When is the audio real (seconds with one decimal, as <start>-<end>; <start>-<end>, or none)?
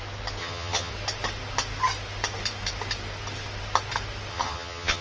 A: 0.0-0.4; 0.9-4.3